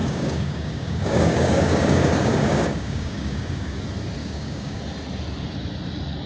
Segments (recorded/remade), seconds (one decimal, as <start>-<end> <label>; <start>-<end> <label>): 0.0-3.8 remade; 3.8-4.2 recorded; 4.2-4.8 remade; 4.8-6.3 recorded